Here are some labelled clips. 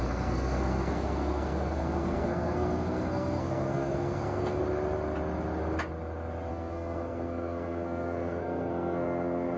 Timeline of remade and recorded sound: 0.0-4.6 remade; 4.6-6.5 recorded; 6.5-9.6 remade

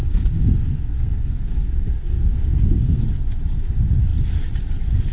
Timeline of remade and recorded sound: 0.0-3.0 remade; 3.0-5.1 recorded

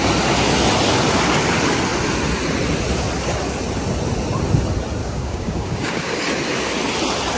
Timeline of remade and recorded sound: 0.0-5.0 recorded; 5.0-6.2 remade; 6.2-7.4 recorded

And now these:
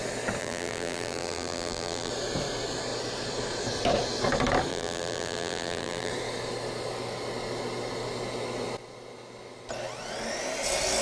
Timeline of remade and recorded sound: 0.0-0.4 recorded; 0.4-2.1 remade; 2.1-4.7 recorded; 4.7-6.1 remade; 6.1-11.0 recorded